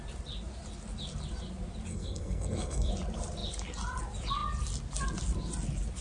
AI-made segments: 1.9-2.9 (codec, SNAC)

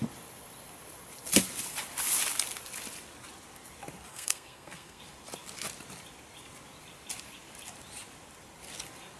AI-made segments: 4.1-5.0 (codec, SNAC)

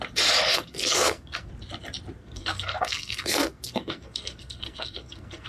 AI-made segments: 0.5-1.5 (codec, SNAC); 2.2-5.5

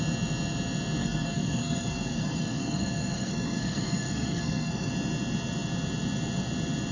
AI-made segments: 1.0-4.9 (codec, SNAC)

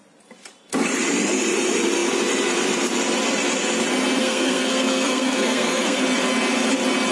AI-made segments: 4.2-6.0 (codec, SNAC)